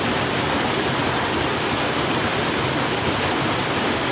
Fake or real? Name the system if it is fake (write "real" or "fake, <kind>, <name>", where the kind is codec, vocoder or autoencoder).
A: real